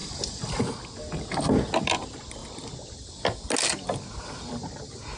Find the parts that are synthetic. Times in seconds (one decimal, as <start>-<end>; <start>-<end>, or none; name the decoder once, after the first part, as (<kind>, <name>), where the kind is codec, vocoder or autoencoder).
none